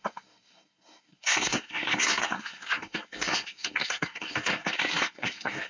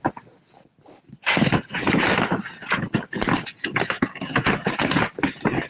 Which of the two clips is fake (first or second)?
first